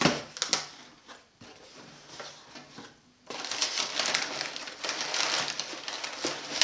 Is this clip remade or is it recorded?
recorded